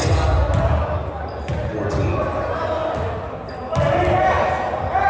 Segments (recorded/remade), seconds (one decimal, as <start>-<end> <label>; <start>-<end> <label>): 0.0-5.1 recorded